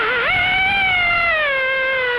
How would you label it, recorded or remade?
remade